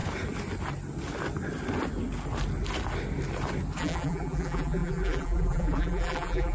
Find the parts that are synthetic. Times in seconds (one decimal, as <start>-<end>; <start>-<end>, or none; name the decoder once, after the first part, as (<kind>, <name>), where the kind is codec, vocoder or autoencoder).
3.8-6.5 (vocoder, BigVGAN v2)